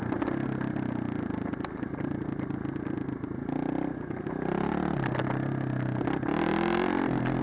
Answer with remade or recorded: recorded